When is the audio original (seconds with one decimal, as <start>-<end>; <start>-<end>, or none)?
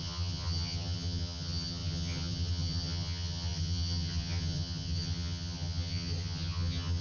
none